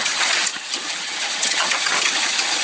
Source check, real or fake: fake